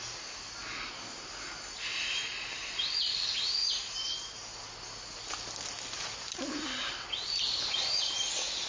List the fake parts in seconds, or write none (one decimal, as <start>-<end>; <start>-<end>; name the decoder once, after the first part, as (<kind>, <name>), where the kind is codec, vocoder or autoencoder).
none